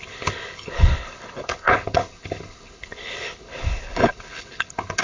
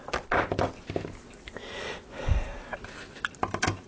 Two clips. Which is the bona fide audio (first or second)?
second